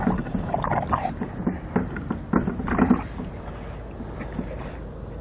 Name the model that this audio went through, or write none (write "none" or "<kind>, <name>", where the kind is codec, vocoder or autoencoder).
none